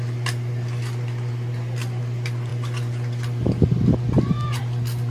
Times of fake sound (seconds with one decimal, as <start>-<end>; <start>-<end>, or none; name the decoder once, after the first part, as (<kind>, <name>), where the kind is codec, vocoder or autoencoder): none